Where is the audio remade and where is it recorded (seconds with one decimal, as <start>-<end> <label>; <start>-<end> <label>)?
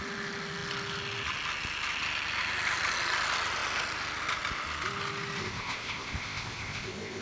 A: 0.0-5.4 recorded; 5.4-7.2 remade